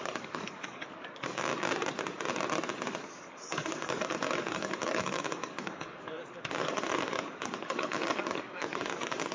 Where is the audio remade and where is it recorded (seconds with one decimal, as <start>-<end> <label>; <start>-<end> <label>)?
0.0-1.5 remade; 1.5-2.8 recorded; 2.8-9.3 remade